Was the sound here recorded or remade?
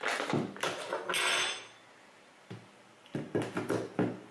recorded